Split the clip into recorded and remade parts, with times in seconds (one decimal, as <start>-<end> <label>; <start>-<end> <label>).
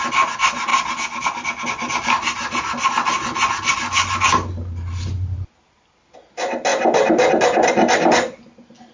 0.0-8.9 recorded